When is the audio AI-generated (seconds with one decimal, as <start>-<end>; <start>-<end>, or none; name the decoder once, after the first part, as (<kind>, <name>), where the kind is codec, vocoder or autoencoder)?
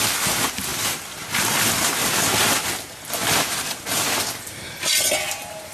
none